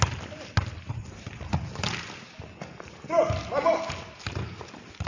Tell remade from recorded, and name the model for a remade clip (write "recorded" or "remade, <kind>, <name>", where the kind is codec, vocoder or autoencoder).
recorded